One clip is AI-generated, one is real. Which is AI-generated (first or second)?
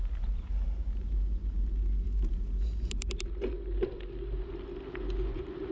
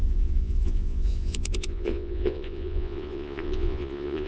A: second